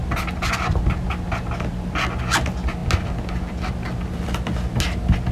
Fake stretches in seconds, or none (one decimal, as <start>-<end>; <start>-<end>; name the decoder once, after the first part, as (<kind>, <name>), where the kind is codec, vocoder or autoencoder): none